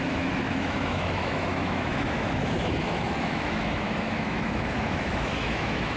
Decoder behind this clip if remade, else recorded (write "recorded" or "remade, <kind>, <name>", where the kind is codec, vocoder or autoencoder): remade, autoencoder, DAC-VAE